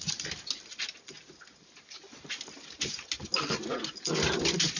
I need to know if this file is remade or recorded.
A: recorded